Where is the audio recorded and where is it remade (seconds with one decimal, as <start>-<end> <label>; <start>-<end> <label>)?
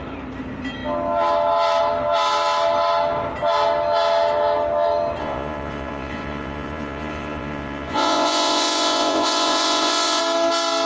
0.0-5.2 recorded; 5.2-10.2 remade; 10.2-10.9 recorded